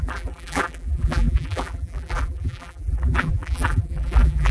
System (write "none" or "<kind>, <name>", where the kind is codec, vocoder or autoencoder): vocoder, BigVGAN v2